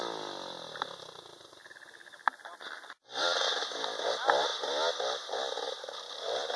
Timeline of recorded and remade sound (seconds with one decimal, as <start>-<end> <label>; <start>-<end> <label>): 0.0-6.6 recorded